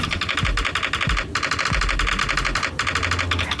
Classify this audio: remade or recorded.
recorded